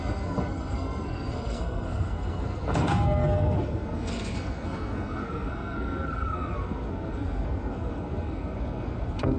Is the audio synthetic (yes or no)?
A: yes